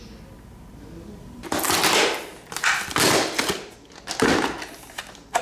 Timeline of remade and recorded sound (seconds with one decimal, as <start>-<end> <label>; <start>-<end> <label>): 0.0-5.4 recorded

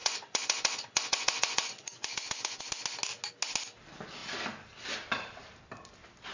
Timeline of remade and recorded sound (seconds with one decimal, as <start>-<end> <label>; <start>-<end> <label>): 0.0-2.6 remade; 2.6-6.3 recorded